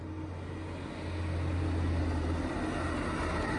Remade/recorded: recorded